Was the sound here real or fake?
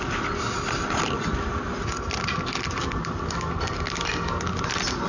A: real